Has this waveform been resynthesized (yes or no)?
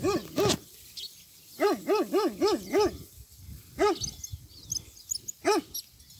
no